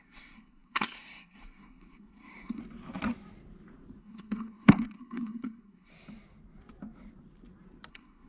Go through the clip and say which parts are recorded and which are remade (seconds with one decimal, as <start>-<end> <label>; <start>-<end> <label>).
0.0-2.6 remade; 2.6-4.0 recorded; 4.0-5.9 remade; 5.9-7.9 recorded; 7.9-8.3 remade